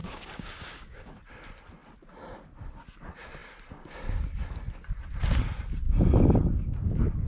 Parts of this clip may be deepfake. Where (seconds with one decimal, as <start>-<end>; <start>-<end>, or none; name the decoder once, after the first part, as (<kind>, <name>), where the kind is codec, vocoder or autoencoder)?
0.0-1.1 (codec, DAC)